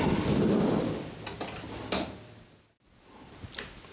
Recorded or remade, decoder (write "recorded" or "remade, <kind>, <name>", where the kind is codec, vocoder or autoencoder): recorded